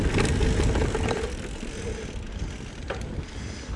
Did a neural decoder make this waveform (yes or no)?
no